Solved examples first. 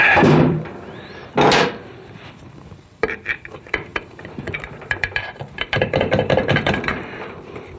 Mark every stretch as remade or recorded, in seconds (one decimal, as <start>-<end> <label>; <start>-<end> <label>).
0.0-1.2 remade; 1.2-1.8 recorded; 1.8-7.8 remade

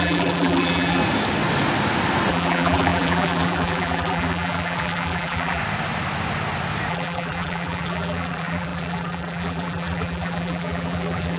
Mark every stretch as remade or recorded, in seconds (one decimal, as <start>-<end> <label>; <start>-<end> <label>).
0.0-1.0 remade; 1.0-2.3 recorded; 2.3-5.6 remade; 5.6-6.9 recorded; 6.9-11.4 remade

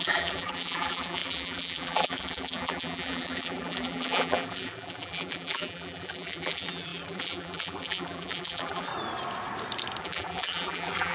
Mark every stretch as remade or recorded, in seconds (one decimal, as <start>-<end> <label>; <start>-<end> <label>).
0.0-8.9 remade; 8.9-10.0 recorded; 10.0-11.1 remade